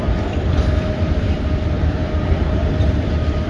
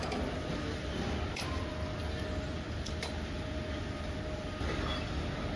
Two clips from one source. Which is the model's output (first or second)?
first